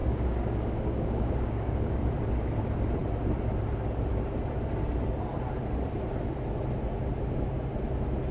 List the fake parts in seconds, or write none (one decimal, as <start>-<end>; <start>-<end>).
0.0-2.0